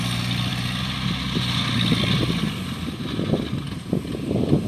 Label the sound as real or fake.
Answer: real